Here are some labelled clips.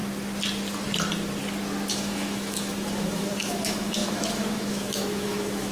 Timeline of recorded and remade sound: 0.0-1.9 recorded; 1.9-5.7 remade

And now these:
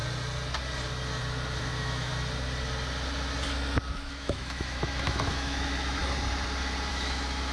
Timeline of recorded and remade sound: 0.0-1.6 recorded; 1.6-2.1 remade; 2.1-3.9 recorded; 3.9-6.0 remade; 6.0-6.9 recorded; 6.9-7.5 remade

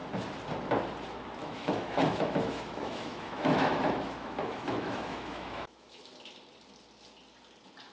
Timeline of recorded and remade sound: 0.0-1.4 recorded; 1.4-6.0 remade; 6.0-7.9 recorded

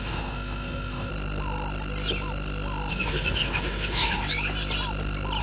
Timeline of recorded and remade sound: 0.0-1.1 remade; 1.1-2.9 recorded; 2.9-4.2 remade; 4.2-5.4 recorded

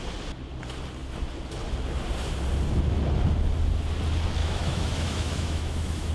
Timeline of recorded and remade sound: 0.0-4.4 recorded; 4.4-6.1 remade

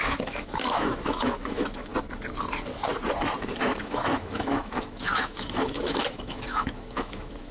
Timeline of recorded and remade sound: 0.0-1.9 remade; 1.9-3.8 recorded; 3.8-7.5 remade

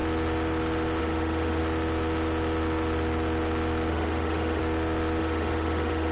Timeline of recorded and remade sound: 0.0-1.0 recorded; 1.0-1.6 remade; 1.6-3.9 recorded; 3.9-4.6 remade; 4.6-5.2 recorded; 5.2-6.1 remade

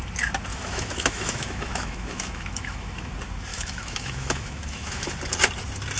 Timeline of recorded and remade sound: 0.0-0.5 recorded; 0.5-3.1 remade; 3.1-3.5 recorded; 3.5-5.1 remade; 5.1-6.0 recorded